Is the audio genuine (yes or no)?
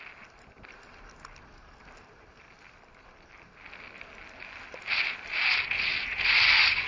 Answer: yes